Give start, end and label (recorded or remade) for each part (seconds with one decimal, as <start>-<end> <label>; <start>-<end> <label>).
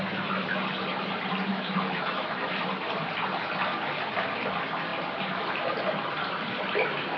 0.0-1.5 recorded; 1.5-2.5 remade; 2.5-7.2 recorded